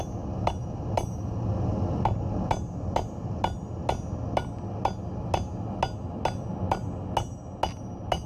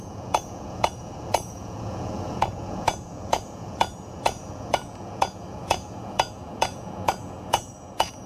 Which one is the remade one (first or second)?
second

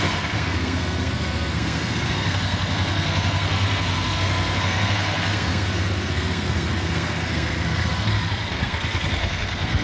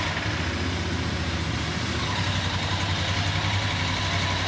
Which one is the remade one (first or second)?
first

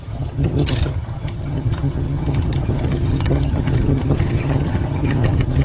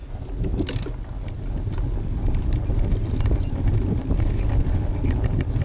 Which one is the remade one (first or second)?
first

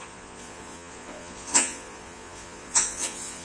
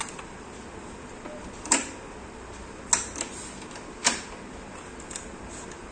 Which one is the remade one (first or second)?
first